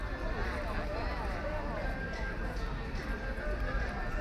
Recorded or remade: recorded